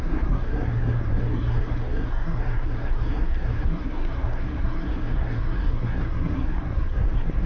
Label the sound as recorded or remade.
remade